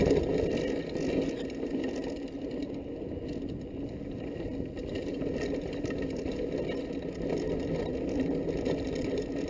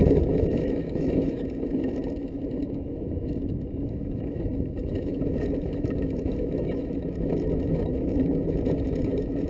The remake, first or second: second